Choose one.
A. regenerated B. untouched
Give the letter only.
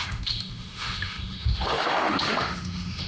A